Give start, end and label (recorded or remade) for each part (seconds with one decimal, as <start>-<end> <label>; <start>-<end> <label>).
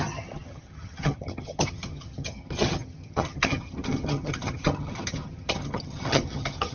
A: 0.0-6.7 remade